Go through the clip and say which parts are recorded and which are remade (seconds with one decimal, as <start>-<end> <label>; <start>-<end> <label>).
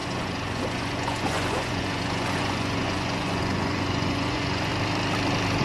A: 0.0-4.7 remade; 4.7-5.6 recorded